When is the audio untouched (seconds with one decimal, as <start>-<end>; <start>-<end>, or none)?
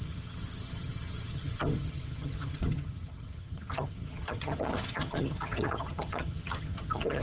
none